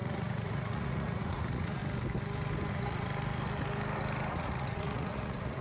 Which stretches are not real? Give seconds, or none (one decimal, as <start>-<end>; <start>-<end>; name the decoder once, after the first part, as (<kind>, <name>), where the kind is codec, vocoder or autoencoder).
0.0-1.8 (vocoder, Vocos); 2.7-3.1; 4.3-5.6